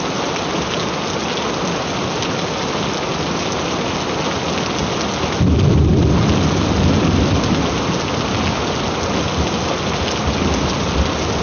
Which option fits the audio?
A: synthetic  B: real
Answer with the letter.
B